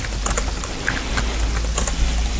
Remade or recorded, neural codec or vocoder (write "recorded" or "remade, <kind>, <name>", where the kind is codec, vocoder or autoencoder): recorded